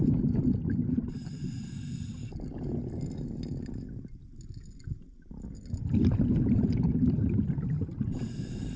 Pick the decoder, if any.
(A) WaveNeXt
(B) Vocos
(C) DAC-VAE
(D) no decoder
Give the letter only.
D